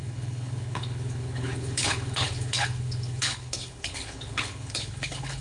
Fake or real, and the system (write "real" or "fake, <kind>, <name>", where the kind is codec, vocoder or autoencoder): fake, codec, HILCodec